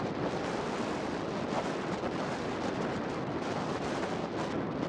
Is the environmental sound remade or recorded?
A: recorded